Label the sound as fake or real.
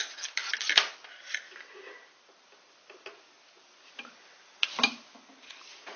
real